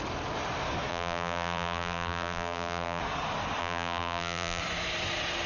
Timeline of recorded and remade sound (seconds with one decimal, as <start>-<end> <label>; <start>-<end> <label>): 0.0-0.9 recorded; 0.9-3.0 remade; 3.0-3.6 recorded; 3.6-4.6 remade; 4.6-5.5 recorded